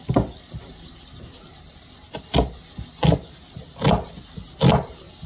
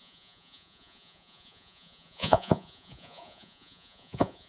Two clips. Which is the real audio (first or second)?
first